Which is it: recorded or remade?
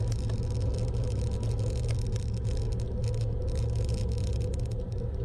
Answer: recorded